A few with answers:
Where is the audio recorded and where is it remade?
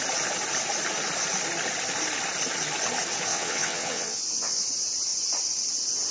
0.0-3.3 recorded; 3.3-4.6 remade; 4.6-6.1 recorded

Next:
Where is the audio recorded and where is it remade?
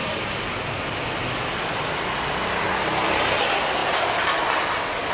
0.0-5.1 recorded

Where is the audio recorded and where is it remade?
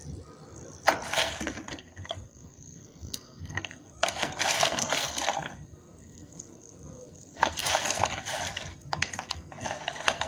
0.0-1.1 recorded; 1.1-10.3 remade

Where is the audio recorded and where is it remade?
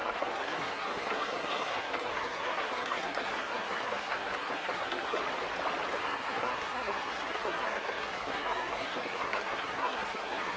0.0-5.2 remade; 5.2-6.0 recorded; 6.0-10.6 remade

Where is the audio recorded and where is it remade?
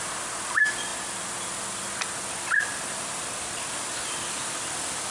0.0-5.1 recorded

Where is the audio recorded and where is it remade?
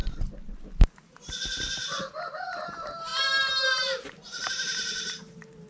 0.0-5.7 recorded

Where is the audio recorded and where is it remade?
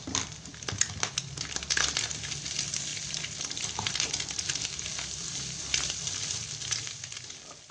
0.0-7.7 recorded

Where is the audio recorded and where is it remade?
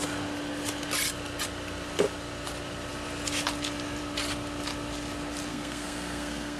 0.0-5.5 recorded; 5.5-6.6 remade